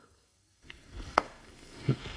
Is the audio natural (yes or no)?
no